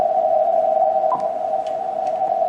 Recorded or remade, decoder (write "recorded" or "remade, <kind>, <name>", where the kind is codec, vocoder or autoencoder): recorded